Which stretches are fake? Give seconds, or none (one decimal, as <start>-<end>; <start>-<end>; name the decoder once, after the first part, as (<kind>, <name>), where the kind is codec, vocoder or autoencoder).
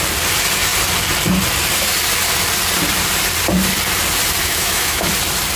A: 4.4-5.1 (autoencoder, DAC-VAE)